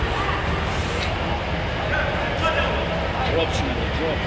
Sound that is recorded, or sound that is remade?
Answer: recorded